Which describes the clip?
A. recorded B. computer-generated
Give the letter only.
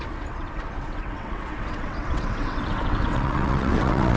B